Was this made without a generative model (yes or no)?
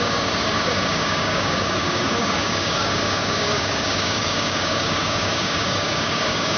no